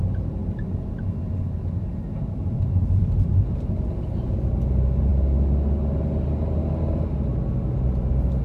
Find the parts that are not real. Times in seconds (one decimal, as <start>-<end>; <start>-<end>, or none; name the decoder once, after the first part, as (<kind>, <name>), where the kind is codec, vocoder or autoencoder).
none

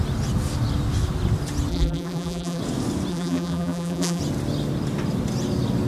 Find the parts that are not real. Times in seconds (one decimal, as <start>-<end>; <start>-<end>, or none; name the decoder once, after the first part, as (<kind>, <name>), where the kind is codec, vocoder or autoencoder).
1.7-2.6 (vocoder, BigVGAN v2); 3.1-4.2

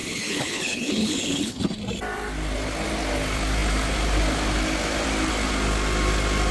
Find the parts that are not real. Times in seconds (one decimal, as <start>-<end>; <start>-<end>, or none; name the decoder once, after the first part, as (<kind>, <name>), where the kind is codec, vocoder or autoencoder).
0.0-1.6 (codec, HILCodec)

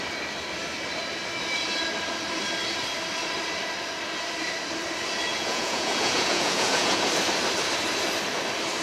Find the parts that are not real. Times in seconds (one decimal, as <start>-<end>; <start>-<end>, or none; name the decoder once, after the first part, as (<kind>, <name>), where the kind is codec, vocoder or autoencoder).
5.3-7.0 (vocoder, Vocos)

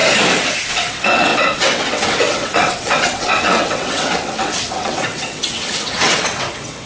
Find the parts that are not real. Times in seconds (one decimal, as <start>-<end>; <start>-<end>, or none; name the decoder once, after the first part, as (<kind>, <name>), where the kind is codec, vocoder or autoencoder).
0.7-6.9 (vocoder, WaveNeXt)